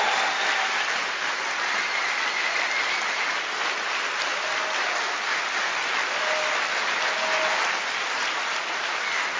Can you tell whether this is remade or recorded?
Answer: recorded